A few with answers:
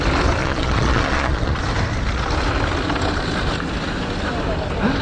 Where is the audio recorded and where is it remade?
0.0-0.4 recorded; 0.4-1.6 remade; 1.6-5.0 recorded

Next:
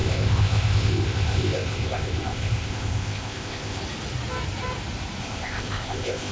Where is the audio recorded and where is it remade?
0.0-3.8 remade; 3.8-5.2 recorded; 5.2-6.3 remade

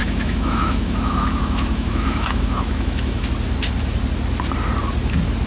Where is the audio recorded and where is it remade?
0.0-3.3 remade; 3.3-5.5 recorded

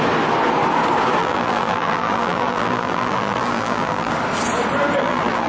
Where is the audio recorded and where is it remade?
0.0-1.2 recorded; 1.2-4.1 remade; 4.1-5.0 recorded; 5.0-5.5 remade